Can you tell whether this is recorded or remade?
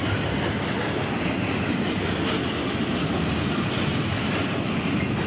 recorded